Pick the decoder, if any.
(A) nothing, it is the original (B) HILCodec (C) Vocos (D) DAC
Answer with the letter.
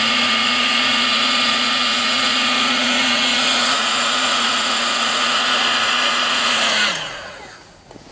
C